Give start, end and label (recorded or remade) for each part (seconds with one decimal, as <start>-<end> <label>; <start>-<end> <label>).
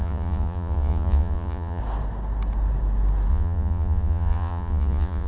0.0-1.8 remade; 1.8-3.3 recorded; 3.3-5.3 remade